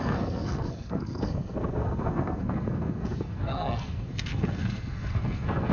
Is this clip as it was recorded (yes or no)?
no